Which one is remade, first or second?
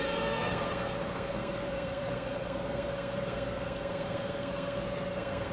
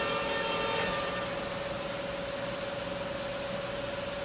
first